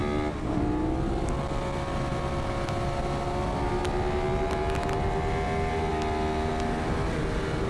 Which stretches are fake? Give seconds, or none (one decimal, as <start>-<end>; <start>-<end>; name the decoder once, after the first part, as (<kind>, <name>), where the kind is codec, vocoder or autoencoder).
none